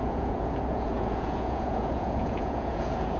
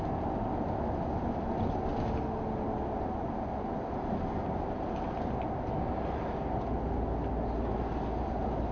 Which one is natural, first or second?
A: second